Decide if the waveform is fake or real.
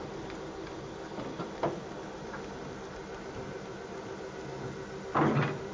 real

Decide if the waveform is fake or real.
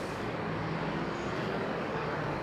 fake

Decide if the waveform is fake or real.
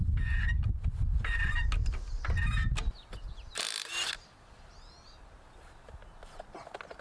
real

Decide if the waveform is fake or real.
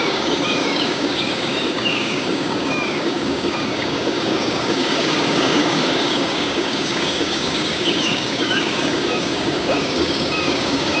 fake